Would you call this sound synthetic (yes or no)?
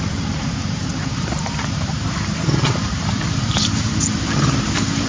yes